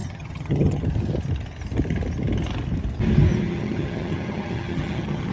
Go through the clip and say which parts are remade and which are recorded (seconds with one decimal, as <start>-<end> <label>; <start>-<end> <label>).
0.0-0.8 remade; 0.8-3.4 recorded; 3.4-5.3 remade